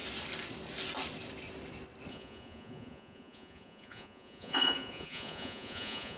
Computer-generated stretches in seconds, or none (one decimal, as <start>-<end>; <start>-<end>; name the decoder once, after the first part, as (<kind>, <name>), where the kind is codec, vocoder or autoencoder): 2.1-6.2 (vocoder, Vocos)